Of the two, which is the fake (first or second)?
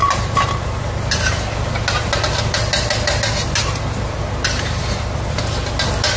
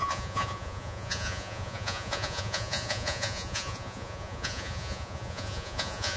second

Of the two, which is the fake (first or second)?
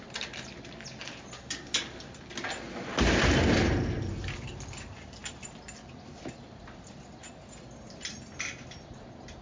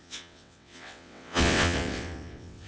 second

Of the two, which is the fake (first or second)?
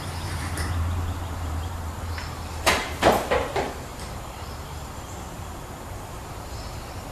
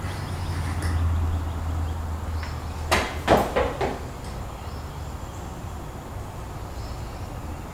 first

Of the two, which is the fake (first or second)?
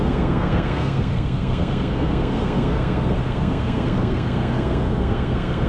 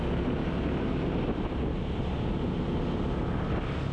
first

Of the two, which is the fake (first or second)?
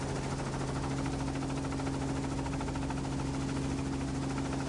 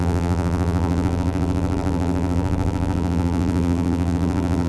second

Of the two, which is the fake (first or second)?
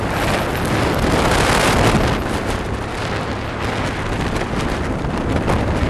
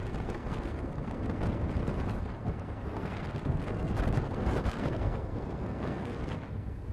second